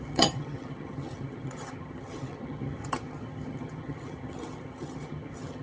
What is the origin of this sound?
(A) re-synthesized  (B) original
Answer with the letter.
A